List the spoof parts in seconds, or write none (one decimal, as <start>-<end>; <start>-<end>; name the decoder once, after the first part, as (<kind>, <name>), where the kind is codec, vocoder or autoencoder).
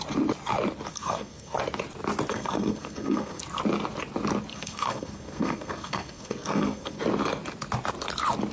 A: 0.9-1.6 (codec, SNAC); 2.3-3.4; 4.5-7.0